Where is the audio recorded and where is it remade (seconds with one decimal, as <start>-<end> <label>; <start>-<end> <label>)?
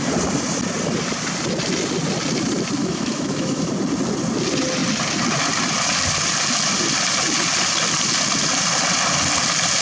0.0-2.8 recorded; 2.8-3.7 remade; 3.7-9.8 recorded